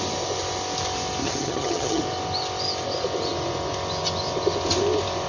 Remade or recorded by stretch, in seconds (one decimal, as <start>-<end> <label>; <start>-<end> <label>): 0.0-1.2 recorded; 1.2-2.0 remade; 2.0-5.3 recorded